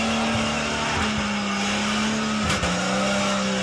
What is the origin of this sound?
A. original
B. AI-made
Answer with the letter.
A